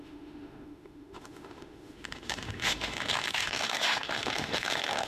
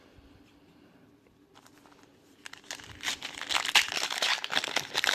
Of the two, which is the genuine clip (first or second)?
second